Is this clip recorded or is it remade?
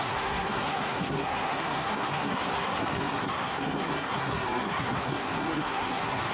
remade